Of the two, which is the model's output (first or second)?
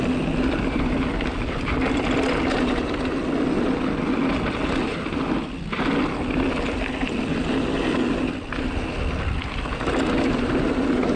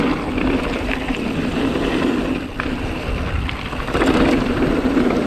second